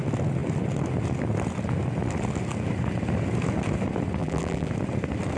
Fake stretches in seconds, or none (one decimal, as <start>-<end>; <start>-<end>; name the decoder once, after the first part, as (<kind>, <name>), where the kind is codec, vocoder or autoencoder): 4.2-4.7 (vocoder, BigVGAN v2)